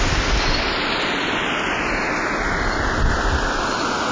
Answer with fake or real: real